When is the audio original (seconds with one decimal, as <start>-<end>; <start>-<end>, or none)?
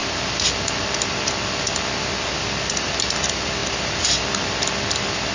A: 0.0-5.3